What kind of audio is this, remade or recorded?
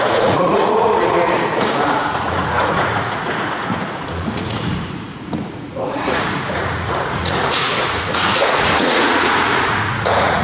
remade